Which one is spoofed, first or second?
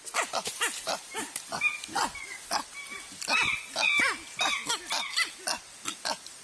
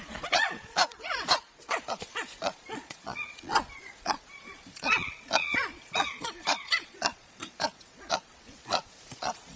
second